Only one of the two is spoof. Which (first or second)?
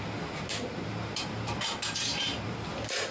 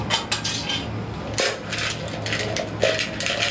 first